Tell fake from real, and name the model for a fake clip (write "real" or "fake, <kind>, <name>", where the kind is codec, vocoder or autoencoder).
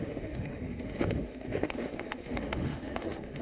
fake, autoencoder, DAC-VAE